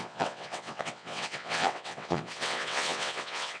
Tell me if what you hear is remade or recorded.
remade